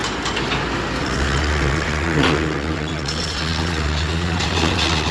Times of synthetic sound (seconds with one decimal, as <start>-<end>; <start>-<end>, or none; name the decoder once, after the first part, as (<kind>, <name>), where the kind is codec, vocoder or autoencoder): 1.0-5.1 (vocoder, WaveNeXt)